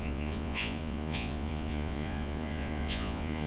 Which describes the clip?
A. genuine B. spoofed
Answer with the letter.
B